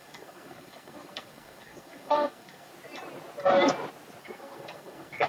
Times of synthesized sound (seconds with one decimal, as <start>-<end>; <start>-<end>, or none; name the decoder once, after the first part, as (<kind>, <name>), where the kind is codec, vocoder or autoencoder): 0.0-2.7 (codec, SNAC); 4.2-5.3